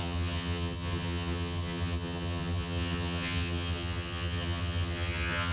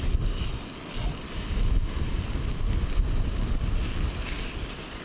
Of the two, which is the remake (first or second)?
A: first